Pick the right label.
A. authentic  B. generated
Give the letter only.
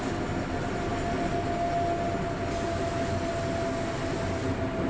A